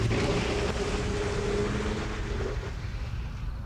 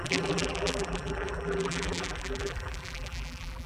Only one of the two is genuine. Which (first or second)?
first